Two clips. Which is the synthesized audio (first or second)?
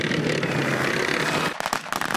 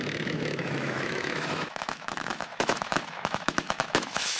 second